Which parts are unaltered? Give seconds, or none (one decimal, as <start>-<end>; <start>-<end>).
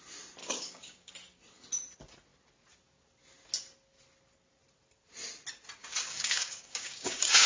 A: 0.0-0.4; 1.1-5.8